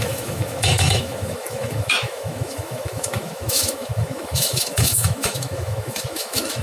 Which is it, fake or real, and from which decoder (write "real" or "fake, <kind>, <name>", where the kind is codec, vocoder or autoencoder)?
fake, autoencoder, DAC-VAE